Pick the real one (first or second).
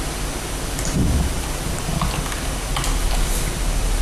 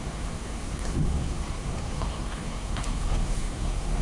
first